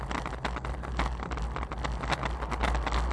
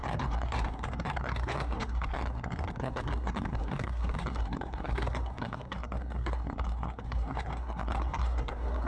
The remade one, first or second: second